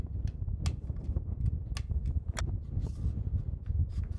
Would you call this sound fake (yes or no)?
no